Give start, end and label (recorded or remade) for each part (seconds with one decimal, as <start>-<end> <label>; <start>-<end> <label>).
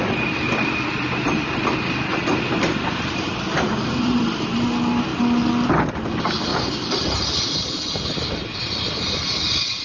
0.0-2.1 recorded; 2.1-4.2 remade; 4.2-6.5 recorded; 6.5-9.8 remade